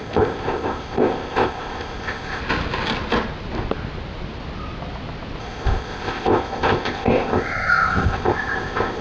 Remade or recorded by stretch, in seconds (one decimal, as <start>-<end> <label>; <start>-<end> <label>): 0.0-2.4 remade; 2.4-5.4 recorded; 5.4-9.0 remade